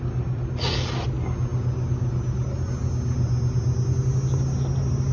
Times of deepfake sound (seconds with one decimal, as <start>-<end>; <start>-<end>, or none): none